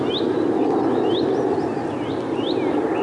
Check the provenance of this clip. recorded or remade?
recorded